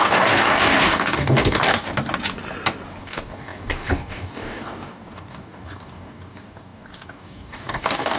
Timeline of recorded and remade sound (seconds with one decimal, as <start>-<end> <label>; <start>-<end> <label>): 0.0-1.9 remade; 1.9-3.0 recorded; 3.0-8.2 remade